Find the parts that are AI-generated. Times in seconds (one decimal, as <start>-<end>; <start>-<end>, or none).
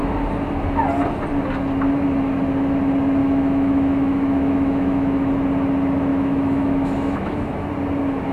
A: 3.2-5.3; 6.1-7.7